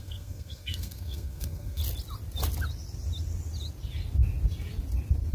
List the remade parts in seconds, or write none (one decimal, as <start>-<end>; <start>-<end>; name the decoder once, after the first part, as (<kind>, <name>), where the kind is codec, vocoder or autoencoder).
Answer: 0.0-1.8 (codec, SNAC)